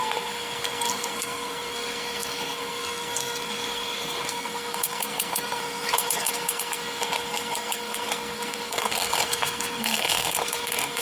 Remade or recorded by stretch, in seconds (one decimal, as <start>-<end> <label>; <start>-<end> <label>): 0.0-11.0 remade